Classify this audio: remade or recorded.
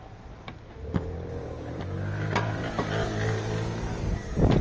remade